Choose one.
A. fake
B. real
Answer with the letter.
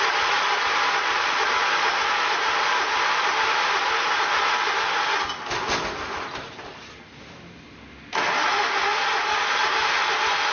B